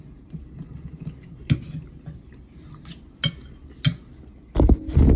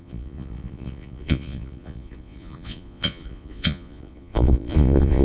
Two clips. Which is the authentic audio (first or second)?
first